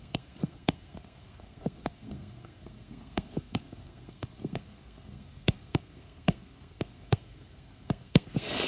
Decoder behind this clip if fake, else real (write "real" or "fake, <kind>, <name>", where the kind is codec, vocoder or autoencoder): fake, codec, SNAC